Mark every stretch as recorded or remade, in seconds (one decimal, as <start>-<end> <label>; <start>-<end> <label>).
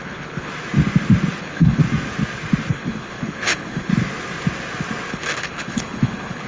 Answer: 0.0-0.5 remade; 0.5-1.4 recorded; 1.4-1.8 remade; 1.8-2.7 recorded; 2.7-3.9 remade; 3.9-5.1 recorded; 5.1-6.5 remade